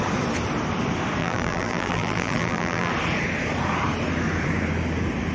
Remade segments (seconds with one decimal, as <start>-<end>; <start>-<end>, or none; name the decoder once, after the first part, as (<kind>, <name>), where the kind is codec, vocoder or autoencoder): 1.2-2.9 (vocoder, BigVGAN v2)